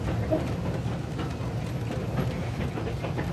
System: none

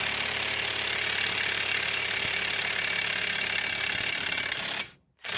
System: none